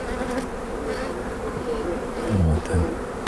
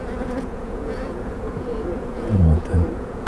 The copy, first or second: second